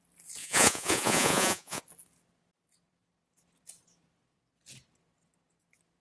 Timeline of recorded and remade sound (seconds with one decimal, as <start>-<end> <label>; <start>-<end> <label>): 0.0-0.4 recorded; 0.4-1.8 remade; 1.8-6.0 recorded